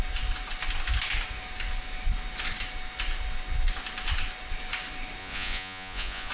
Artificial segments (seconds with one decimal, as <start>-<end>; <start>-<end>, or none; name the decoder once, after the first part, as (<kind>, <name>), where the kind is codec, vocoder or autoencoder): 5.2-6.3 (vocoder, Vocos)